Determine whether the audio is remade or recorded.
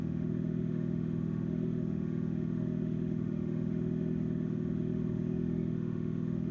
remade